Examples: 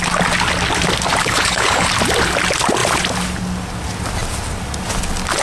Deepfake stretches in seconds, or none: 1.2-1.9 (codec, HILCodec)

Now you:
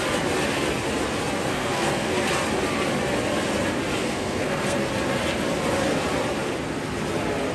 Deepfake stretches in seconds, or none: 1.5-2.3 (codec, SNAC); 4.0-4.9

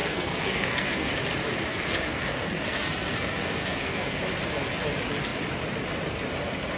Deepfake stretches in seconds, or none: 0.0-1.1 (codec, SNAC); 1.7-4.2

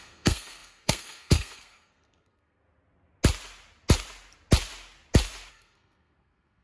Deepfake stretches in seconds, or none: 0.0-2.6 (codec, SNAC); 5.5-6.6

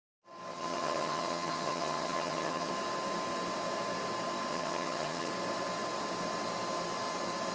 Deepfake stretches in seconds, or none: 0.5-2.7 (vocoder, HiFi-GAN); 4.5-5.3